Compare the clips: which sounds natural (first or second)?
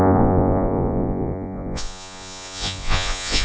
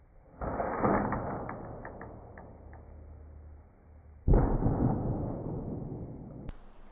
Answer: second